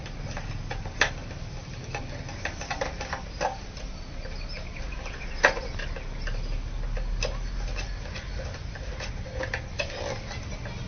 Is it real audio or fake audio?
real